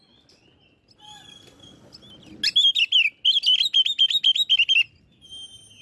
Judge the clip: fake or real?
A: real